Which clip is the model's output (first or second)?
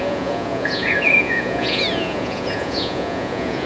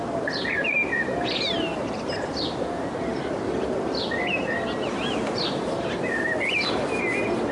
first